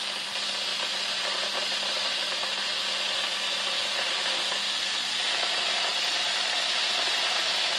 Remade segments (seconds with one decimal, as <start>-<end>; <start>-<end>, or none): 5.9-7.8